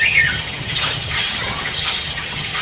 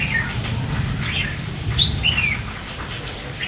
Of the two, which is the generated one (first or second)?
first